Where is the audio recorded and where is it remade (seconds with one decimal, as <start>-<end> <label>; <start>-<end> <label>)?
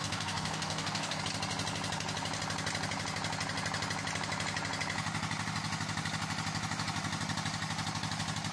0.0-1.2 remade; 1.2-8.5 recorded